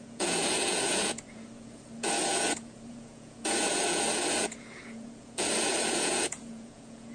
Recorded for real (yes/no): no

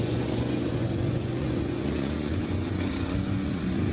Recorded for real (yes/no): no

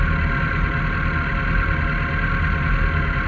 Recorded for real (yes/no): yes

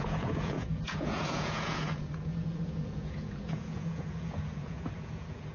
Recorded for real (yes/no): no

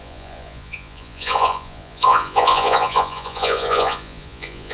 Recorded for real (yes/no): no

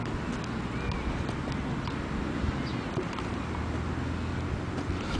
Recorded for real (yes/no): yes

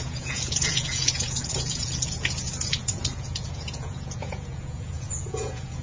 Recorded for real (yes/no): no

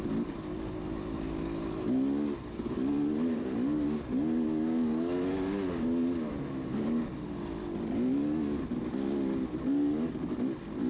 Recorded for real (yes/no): yes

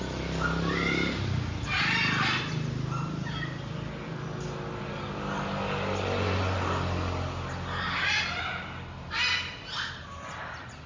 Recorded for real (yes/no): yes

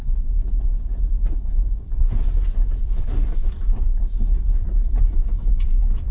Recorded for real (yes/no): yes